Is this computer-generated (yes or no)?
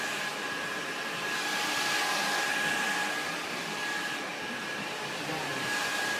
no